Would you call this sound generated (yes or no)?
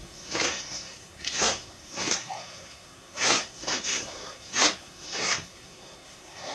yes